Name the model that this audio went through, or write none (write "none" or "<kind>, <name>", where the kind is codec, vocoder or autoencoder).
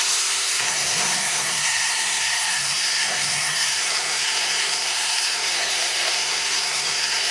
codec, SNAC